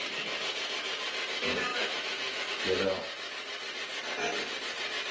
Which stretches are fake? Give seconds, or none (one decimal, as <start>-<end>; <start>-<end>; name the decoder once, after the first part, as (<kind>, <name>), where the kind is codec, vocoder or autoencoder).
1.7-2.5 (autoencoder, DAC-VAE)